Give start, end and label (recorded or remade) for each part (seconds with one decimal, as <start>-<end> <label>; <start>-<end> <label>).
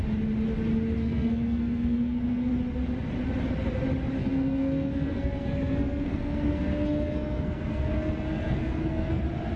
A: 0.0-1.0 recorded; 1.0-2.5 remade; 2.5-4.2 recorded; 4.2-9.2 remade; 9.2-9.6 recorded